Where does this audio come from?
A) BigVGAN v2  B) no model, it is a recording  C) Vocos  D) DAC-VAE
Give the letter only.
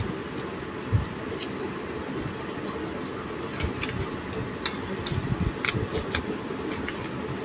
A